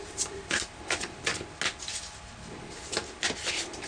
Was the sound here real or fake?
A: real